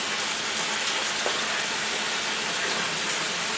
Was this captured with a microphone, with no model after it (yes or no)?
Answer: yes